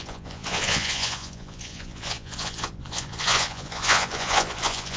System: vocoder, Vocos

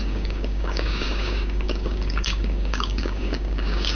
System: codec, DAC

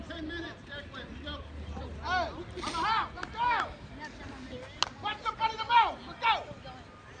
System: none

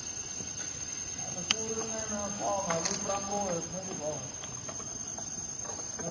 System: none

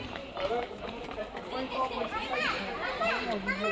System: vocoder, BigVGAN v2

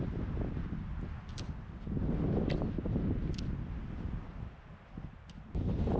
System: none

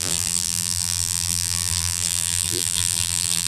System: vocoder, BigVGAN v2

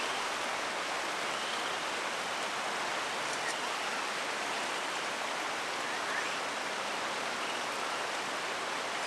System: none